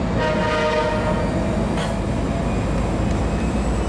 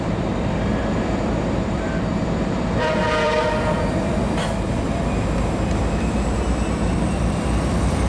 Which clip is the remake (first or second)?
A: second